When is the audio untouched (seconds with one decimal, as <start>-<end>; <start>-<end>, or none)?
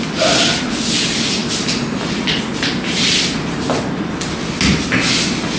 0.0-5.6